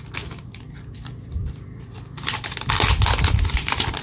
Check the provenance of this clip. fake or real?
real